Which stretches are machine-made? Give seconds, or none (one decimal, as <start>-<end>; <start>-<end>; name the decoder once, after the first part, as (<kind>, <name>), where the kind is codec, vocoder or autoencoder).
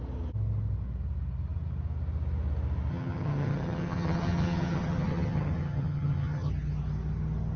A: 2.9-6.5 (vocoder, HiFi-GAN)